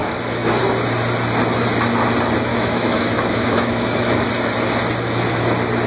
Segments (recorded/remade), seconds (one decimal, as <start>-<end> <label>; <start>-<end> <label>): 0.0-0.6 remade; 0.6-2.5 recorded; 2.5-4.3 remade; 4.3-5.9 recorded